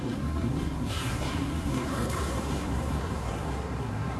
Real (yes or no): no